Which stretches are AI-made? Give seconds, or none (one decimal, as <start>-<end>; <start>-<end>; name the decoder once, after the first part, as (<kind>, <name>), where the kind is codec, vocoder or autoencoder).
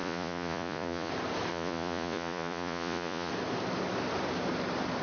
0.0-1.1 (vocoder, Vocos); 1.5-3.3